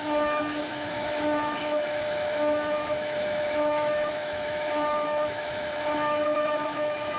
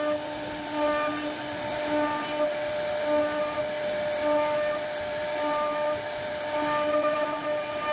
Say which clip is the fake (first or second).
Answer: first